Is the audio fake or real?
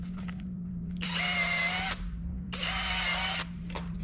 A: fake